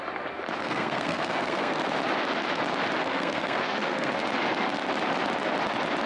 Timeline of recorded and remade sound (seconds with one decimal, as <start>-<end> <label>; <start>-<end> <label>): 0.0-0.6 recorded; 0.6-1.8 remade; 1.8-3.0 recorded; 3.0-4.1 remade; 4.1-6.1 recorded